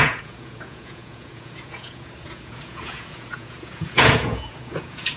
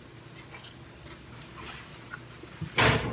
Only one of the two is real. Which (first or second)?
second